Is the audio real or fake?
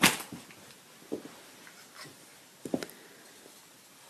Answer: real